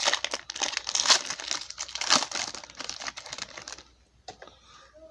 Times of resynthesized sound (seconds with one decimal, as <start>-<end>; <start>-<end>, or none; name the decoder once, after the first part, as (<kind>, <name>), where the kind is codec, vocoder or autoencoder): none